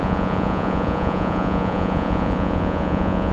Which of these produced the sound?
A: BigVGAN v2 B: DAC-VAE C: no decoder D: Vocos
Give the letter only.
D